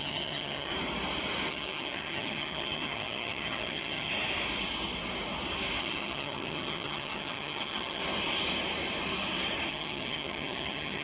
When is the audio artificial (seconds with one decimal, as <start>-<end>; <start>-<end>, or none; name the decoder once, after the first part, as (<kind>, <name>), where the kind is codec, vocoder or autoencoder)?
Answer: 0.0-0.7 (vocoder, HiFi-GAN); 1.5-4.1; 5.8-8.0; 9.7-11.0